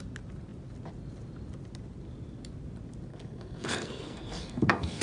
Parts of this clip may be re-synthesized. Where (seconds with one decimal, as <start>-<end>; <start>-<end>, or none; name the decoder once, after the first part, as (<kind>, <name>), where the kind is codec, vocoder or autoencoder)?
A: 3.1-5.0 (codec, SNAC)